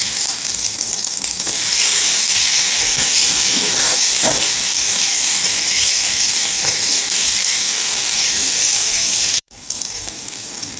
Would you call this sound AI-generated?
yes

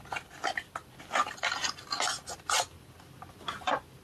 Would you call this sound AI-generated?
no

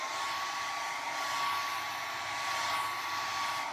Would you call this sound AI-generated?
no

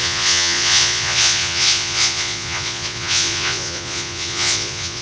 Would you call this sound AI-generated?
yes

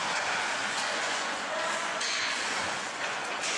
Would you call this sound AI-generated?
yes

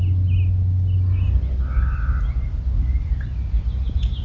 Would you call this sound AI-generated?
no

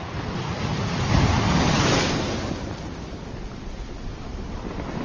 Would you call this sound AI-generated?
no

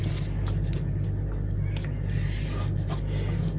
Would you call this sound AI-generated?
no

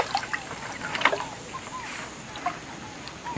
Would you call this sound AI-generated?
no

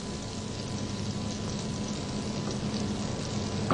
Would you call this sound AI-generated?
no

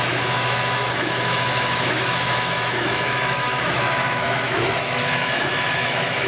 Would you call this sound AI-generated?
yes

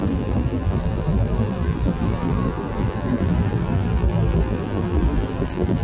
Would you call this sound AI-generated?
yes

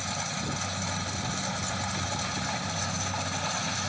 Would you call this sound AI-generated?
no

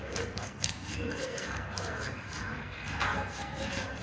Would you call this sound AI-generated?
yes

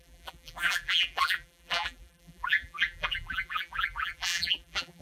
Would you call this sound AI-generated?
yes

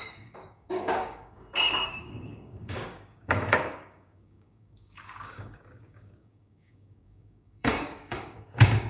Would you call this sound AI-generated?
yes